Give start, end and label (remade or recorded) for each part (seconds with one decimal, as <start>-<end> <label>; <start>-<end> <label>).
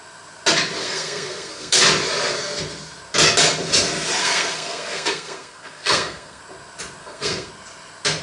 0.0-0.8 recorded; 0.8-1.8 remade; 1.8-4.2 recorded; 4.2-6.4 remade; 6.4-7.0 recorded; 7.0-7.5 remade; 7.5-8.2 recorded